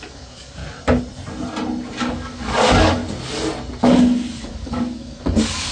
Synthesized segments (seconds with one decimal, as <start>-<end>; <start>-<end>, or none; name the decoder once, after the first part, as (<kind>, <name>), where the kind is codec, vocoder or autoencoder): 0.0-0.6 (codec, DAC); 2.0-3.0; 3.8-5.7

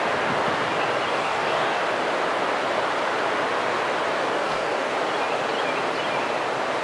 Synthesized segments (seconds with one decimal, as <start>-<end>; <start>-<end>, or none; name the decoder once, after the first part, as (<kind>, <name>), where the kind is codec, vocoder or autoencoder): 1.1-1.8 (codec, DAC); 4.3-4.9

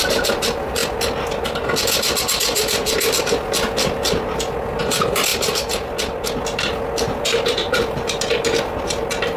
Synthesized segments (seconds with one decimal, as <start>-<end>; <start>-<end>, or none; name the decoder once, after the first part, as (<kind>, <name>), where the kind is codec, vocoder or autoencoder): none

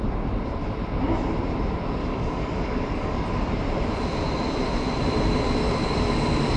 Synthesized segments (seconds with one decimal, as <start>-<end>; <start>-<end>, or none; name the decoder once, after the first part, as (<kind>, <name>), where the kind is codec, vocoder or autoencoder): 2.0-3.2 (codec, DAC)

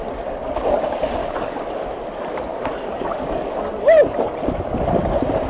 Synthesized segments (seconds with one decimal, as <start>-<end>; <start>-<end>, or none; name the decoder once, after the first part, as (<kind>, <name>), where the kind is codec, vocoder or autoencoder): 1.2-1.8 (codec, DAC); 2.5-3.6

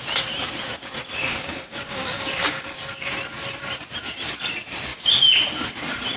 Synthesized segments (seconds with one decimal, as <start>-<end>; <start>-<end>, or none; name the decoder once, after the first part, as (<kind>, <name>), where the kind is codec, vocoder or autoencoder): 1.2-3.1 (codec, DAC)

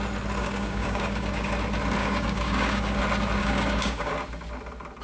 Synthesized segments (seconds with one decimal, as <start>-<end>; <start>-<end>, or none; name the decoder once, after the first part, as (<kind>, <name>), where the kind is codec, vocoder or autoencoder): 0.4-1.5 (codec, DAC); 2.0-3.0; 3.4-4.1